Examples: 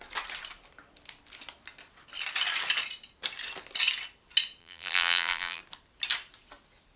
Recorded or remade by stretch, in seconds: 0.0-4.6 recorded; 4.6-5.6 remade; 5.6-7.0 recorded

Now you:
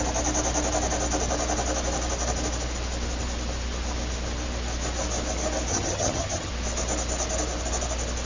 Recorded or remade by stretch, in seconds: 0.0-5.7 recorded; 5.7-6.5 remade; 6.5-8.3 recorded

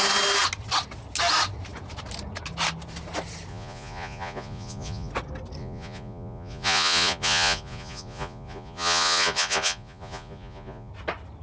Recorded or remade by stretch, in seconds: 0.0-3.5 recorded; 3.5-5.1 remade; 5.1-5.6 recorded; 5.6-10.9 remade; 10.9-11.4 recorded

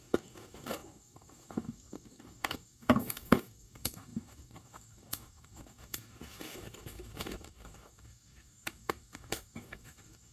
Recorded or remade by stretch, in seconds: 0.0-10.3 remade

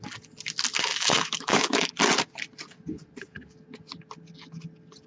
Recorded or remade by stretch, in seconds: 0.0-0.9 recorded; 0.9-1.9 remade; 1.9-5.1 recorded

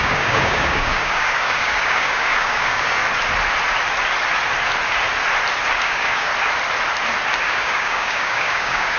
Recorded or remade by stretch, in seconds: 0.0-3.0 remade; 3.0-5.8 recorded; 5.8-6.3 remade; 6.3-7.4 recorded; 7.4-9.0 remade

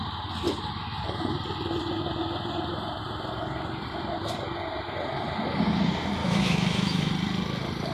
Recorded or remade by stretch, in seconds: 0.0-6.2 recorded; 6.2-7.1 remade; 7.1-7.9 recorded